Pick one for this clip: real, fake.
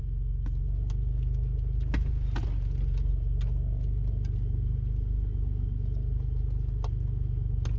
real